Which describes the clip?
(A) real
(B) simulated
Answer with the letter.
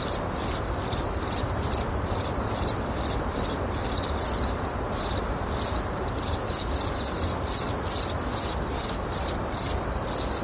A